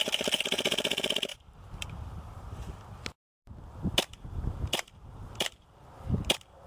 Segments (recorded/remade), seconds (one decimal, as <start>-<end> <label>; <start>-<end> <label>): 0.0-1.3 recorded; 1.3-2.7 remade; 2.7-4.1 recorded; 4.1-5.7 remade; 5.7-6.7 recorded